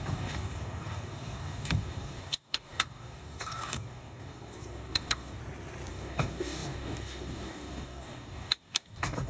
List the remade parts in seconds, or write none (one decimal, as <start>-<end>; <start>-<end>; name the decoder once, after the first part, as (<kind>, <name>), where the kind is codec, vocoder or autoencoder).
0.0-5.4 (codec, DAC); 5.9-9.3